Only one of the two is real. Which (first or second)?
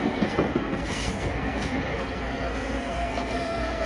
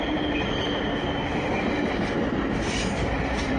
second